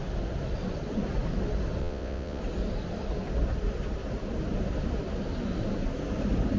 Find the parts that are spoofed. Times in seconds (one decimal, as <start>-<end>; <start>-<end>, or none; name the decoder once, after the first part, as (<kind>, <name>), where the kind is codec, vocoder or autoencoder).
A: 1.8-2.4 (vocoder, WaveNeXt)